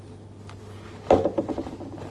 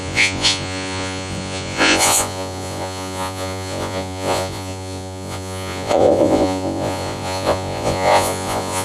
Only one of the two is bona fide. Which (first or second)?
first